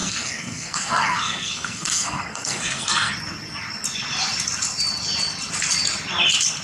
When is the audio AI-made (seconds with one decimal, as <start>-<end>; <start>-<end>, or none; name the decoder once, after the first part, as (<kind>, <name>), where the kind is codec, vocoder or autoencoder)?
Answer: 0.0-3.1 (codec, SNAC)